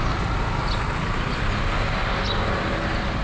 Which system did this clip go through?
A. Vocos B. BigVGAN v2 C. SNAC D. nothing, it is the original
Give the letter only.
D